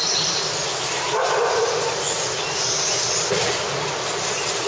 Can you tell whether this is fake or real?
real